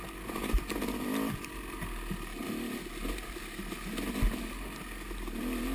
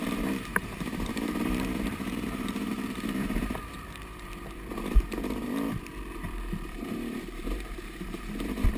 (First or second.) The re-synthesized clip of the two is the second